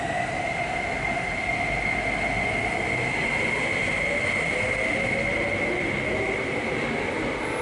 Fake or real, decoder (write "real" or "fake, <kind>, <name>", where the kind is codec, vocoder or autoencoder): real